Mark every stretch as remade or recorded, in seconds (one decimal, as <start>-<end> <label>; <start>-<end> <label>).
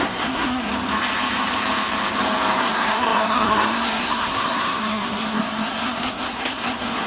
0.0-0.7 remade; 0.7-2.6 recorded; 2.6-7.1 remade